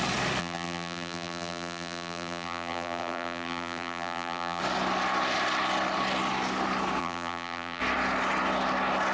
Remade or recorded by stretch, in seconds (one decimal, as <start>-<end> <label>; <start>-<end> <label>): 0.0-0.4 recorded; 0.4-4.6 remade; 4.6-7.0 recorded; 7.0-7.8 remade; 7.8-9.1 recorded